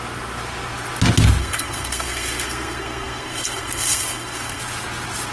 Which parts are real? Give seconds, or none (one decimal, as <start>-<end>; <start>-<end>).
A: 0.0-1.4; 4.6-5.3